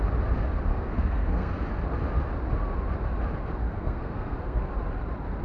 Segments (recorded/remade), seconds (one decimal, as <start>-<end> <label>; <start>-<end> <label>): 0.0-0.7 recorded; 0.7-1.5 remade; 1.5-3.6 recorded; 3.6-4.6 remade; 4.6-5.4 recorded